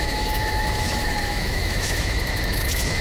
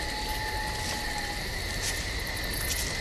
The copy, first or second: first